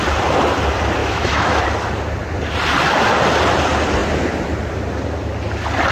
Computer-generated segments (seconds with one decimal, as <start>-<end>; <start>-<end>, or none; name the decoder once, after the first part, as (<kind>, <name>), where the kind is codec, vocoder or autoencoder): 1.0-1.6 (autoencoder, DAC-VAE)